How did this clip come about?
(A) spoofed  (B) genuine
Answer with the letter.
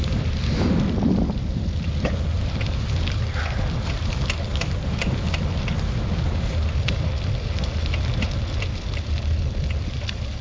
A